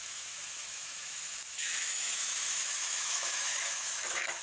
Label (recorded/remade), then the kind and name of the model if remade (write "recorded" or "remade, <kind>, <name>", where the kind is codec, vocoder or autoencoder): remade, autoencoder, DAC-VAE